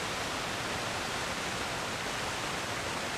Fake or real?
real